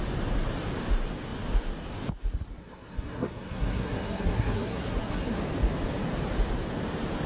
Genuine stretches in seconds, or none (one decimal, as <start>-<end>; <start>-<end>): 0.0-2.6; 5.4-7.3